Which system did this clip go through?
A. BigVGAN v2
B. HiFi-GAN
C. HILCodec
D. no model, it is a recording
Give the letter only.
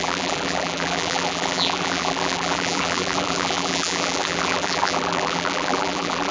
A